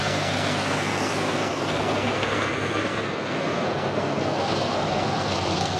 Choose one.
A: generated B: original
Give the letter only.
A